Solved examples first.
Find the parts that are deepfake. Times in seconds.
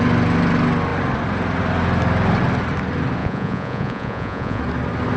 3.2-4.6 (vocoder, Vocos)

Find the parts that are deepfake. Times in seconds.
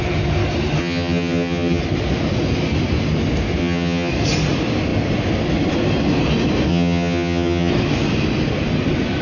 0.8-1.8 (vocoder, HiFi-GAN); 3.6-4.1; 6.7-7.7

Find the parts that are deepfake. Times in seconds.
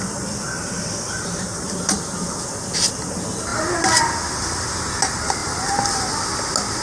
none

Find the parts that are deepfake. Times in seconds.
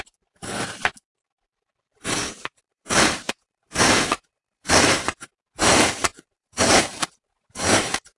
2.4-5.3 (vocoder, BigVGAN v2); 5.7-8.2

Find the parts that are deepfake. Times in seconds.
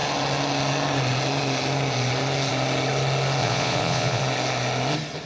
3.4-4.2 (vocoder, Vocos)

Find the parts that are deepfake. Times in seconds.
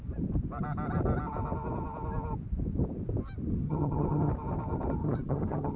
3.5-4.3 (vocoder, HiFi-GAN); 5.0-5.8